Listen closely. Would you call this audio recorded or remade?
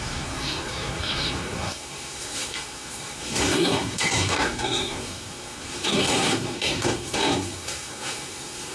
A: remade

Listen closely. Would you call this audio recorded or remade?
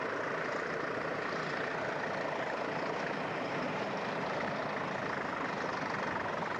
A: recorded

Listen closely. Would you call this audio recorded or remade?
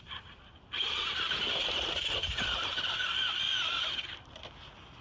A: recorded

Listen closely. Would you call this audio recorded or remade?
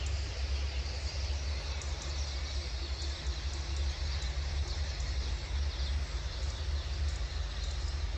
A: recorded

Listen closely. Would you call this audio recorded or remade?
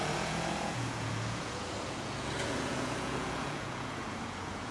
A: remade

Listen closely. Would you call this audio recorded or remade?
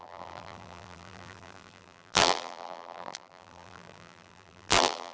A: remade